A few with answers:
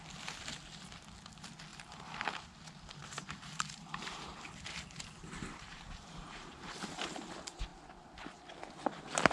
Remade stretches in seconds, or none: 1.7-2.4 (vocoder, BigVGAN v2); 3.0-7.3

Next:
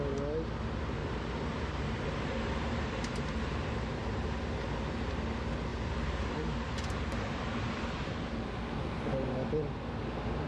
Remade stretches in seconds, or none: 1.0-4.4 (vocoder, BigVGAN v2); 5.7-9.4

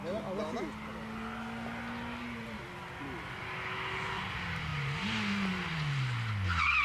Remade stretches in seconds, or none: none

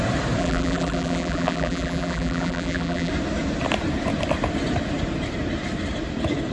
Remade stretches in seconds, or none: 0.4-3.1 (vocoder, BigVGAN v2)